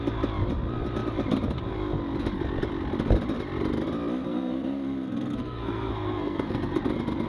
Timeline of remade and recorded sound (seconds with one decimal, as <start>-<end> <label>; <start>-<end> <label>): 0.0-4.2 recorded; 4.2-6.8 remade; 6.8-7.3 recorded